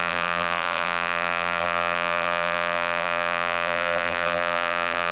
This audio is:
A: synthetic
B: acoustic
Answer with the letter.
A